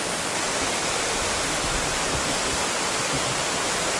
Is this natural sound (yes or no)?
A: yes